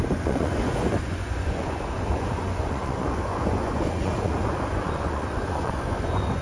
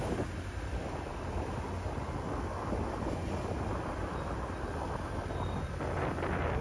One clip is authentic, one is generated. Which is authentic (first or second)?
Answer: second